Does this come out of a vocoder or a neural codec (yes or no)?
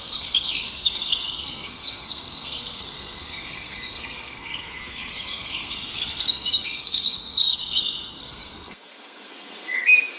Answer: yes